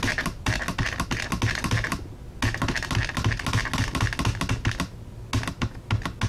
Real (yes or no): yes